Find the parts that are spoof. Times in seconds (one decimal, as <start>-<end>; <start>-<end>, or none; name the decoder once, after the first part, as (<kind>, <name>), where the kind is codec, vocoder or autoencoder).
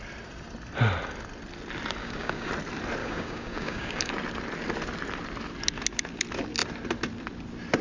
2.0-2.5 (codec, DAC); 3.0-4.1